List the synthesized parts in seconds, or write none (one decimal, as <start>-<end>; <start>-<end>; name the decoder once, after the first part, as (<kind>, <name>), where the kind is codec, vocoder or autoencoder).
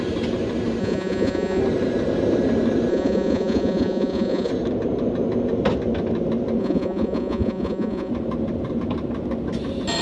0.8-1.6 (vocoder, Vocos); 2.9-4.5; 6.6-8.1